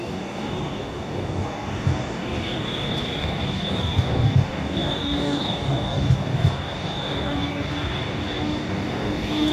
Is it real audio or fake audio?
fake